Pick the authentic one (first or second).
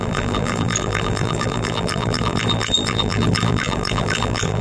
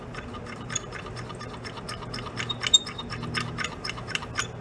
second